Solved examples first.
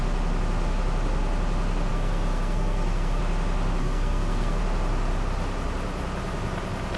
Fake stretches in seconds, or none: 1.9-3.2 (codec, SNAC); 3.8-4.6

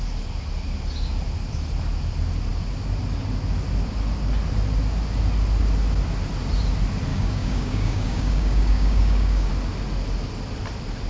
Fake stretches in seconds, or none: 7.1-9.5 (codec, DAC)